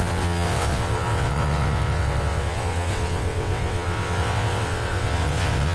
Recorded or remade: remade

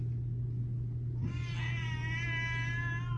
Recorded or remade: recorded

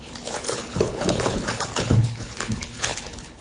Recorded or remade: remade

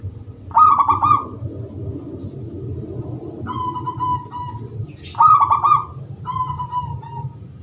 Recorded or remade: recorded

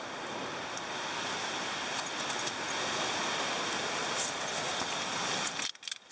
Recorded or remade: recorded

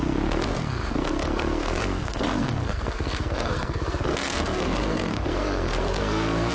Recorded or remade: remade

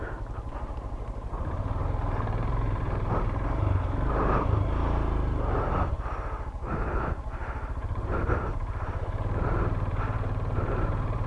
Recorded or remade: remade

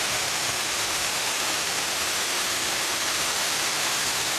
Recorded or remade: remade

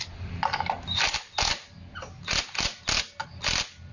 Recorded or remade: recorded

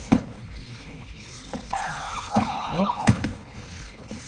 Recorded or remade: remade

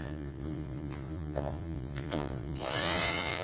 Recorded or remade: remade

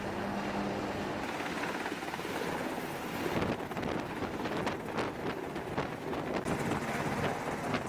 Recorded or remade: recorded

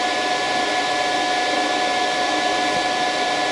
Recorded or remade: recorded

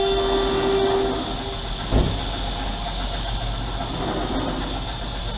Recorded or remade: recorded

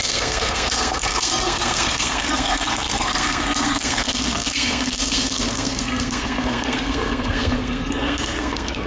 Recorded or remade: remade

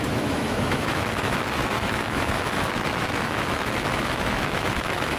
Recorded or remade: remade